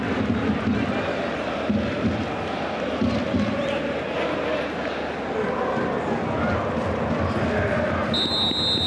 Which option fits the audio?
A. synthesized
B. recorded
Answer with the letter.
B